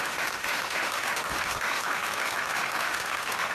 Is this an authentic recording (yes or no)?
no